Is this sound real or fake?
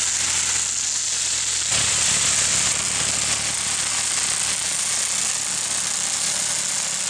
real